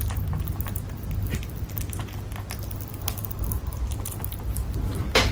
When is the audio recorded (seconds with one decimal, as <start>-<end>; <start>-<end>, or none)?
0.0-3.7; 4.4-5.3